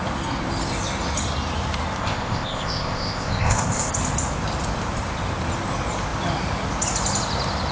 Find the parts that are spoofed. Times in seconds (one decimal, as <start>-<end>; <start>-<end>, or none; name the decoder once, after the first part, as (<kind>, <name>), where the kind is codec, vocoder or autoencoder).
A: 2.0-3.9 (codec, ZipCodec)